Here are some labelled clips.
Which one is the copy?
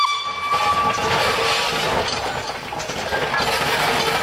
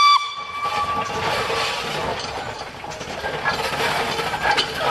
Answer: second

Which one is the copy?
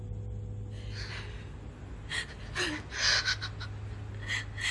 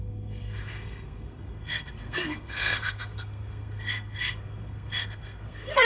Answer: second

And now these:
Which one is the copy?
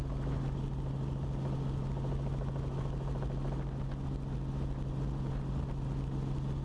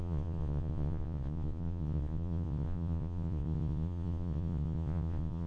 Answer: second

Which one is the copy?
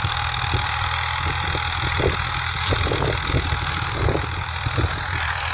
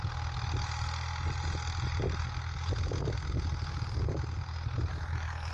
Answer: first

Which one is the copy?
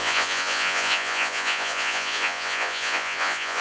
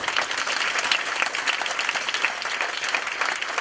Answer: first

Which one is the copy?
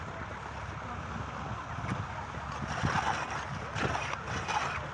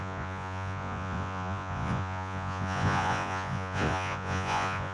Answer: second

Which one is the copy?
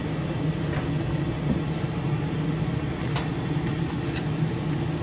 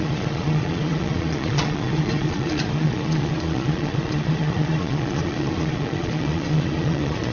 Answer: second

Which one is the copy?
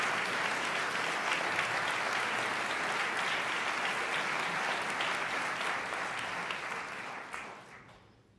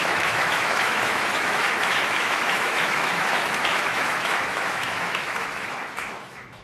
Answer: second